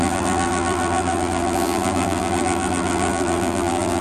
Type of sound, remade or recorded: remade